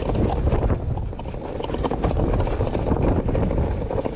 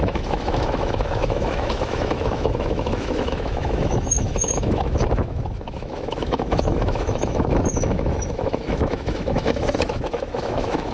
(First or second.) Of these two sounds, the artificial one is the second